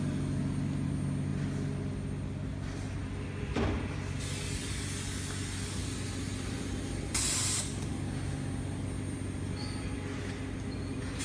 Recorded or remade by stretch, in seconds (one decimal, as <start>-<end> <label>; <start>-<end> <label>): 0.0-11.2 recorded